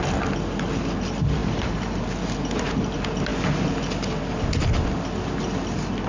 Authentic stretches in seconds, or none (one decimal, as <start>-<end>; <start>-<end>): 0.0-1.4; 2.0-6.1